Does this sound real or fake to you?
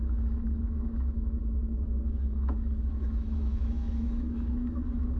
fake